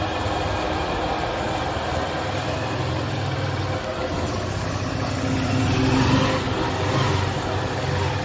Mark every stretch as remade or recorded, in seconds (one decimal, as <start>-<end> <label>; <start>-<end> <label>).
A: 0.0-8.2 recorded